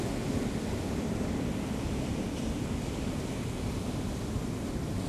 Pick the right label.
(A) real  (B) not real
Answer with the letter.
A